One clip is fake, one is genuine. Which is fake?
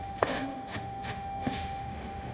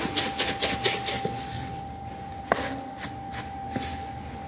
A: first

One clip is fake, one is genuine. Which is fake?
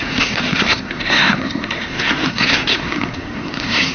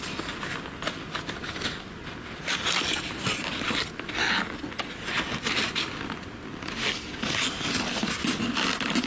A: first